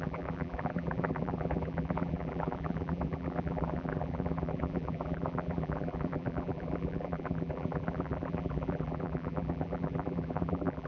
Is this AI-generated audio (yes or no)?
yes